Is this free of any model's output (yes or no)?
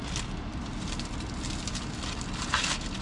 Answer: yes